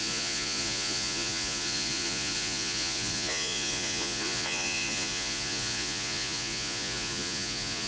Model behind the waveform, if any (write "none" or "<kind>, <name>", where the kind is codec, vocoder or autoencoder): vocoder, Vocos